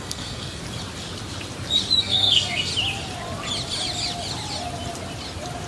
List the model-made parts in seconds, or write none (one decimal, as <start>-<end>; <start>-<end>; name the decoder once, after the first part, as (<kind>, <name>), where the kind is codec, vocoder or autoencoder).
0.0-0.6 (codec, SNAC); 2.0-2.7